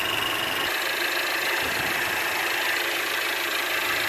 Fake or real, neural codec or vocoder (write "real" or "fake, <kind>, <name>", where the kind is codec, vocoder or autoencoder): real